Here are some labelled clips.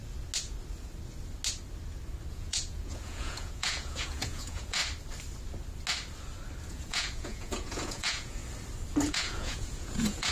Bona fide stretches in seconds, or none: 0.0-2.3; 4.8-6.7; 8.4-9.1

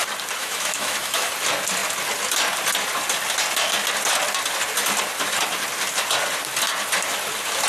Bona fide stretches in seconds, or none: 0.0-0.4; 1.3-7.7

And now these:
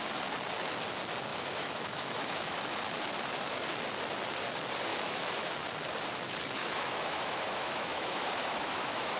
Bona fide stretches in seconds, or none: 0.0-1.3; 2.6-4.9; 5.5-6.6